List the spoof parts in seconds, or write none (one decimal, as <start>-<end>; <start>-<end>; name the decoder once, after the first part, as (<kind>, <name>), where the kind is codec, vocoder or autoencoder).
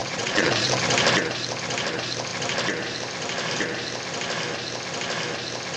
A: 0.0-0.8 (vocoder, Vocos)